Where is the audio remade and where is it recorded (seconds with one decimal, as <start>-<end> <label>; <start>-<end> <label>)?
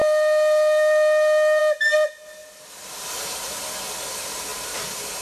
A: 0.0-5.2 recorded